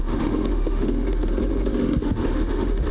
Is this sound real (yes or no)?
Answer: no